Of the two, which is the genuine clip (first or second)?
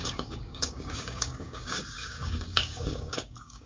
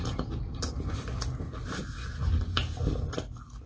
second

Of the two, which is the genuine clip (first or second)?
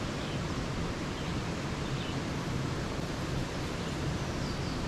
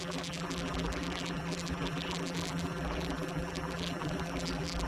first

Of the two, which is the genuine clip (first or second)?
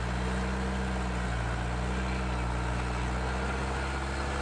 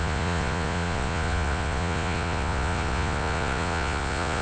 first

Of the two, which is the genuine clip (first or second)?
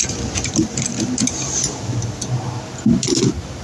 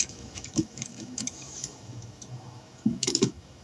first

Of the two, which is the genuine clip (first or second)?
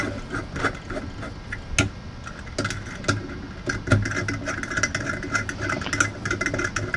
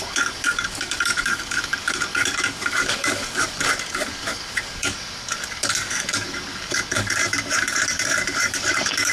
first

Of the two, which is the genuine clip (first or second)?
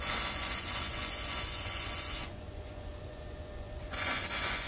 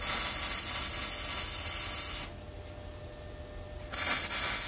second